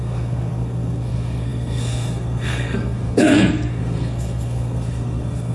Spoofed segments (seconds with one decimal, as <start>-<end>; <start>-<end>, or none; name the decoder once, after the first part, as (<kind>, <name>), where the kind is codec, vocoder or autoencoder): 0.0-5.5 (codec, SNAC)